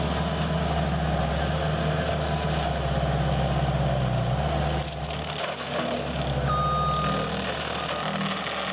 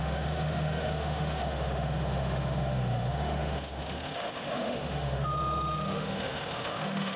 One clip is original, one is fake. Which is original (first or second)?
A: first